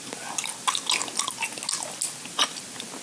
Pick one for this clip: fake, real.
real